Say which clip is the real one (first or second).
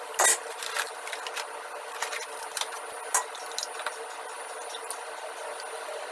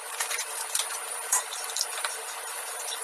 first